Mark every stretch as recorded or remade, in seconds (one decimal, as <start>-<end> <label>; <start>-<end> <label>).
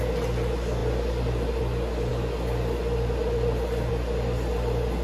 0.0-5.0 recorded